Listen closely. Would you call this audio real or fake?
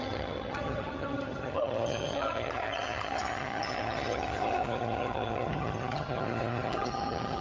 fake